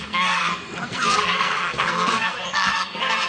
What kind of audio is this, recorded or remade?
remade